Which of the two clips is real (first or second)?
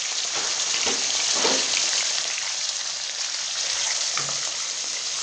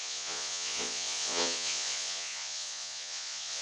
first